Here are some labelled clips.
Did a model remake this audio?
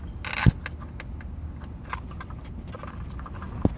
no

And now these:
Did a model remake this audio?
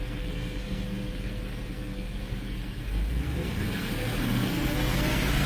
yes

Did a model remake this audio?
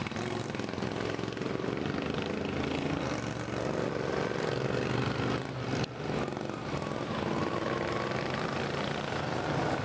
no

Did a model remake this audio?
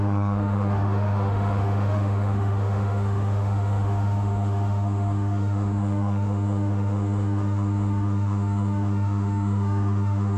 yes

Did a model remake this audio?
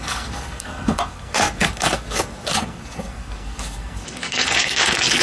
yes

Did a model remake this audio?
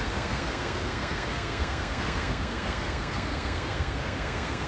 yes